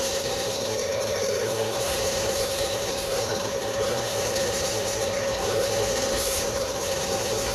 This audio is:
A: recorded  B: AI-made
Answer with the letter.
B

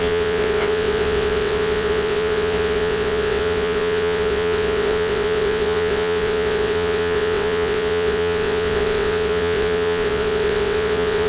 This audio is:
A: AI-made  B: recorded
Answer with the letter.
A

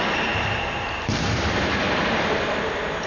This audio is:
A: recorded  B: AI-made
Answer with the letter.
B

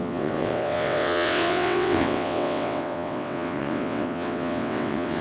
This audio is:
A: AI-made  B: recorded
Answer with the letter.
A